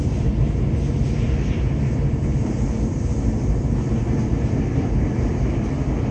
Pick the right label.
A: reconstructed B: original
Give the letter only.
B